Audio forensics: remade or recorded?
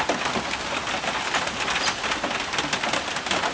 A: recorded